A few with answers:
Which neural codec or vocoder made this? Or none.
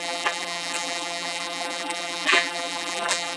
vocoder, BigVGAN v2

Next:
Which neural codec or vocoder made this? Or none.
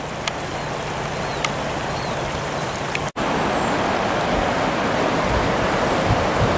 none